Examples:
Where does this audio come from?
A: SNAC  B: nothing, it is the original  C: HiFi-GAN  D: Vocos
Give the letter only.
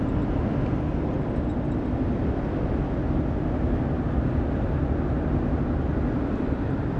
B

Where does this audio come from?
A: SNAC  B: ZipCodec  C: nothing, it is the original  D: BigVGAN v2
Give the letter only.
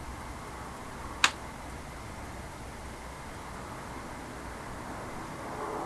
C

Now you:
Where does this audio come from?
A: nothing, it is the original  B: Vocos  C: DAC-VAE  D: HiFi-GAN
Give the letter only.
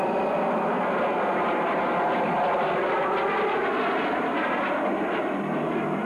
A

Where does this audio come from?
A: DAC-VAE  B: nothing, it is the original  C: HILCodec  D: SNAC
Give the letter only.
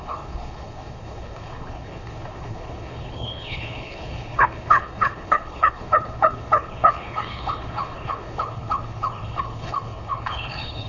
C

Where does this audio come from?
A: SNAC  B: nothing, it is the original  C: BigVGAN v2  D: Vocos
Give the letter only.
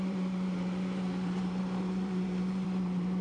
C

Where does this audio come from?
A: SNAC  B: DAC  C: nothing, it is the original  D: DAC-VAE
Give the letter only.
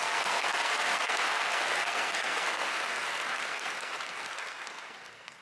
A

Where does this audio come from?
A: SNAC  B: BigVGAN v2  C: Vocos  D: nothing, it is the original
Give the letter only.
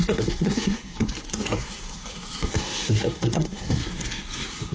A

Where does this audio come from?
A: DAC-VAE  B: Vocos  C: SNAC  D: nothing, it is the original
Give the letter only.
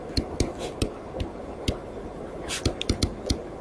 D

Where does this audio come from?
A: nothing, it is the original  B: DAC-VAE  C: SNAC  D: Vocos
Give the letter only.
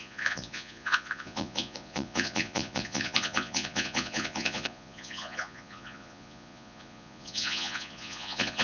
D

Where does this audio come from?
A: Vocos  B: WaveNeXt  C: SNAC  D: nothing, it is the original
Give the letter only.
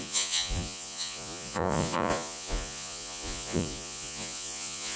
A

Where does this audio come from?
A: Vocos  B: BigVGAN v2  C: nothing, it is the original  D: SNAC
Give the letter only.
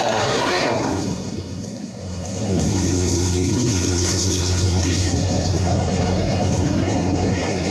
D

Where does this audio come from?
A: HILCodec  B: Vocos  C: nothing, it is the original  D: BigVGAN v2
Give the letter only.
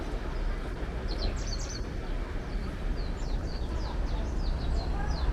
C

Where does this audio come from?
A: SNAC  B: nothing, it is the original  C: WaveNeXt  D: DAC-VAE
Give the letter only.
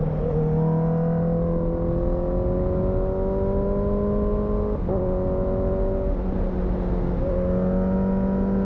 B